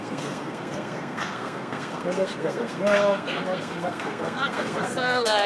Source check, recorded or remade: remade